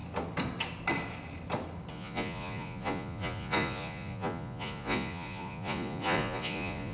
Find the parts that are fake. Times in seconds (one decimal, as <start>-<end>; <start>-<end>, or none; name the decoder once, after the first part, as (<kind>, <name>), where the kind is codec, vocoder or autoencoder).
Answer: 1.9-6.9 (vocoder, Vocos)